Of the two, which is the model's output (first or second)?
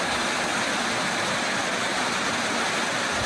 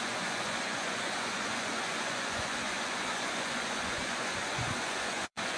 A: second